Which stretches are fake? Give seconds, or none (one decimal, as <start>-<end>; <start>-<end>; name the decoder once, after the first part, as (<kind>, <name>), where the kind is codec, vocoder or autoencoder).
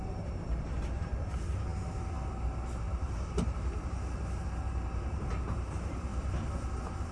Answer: 0.0-6.1 (vocoder, BigVGAN v2)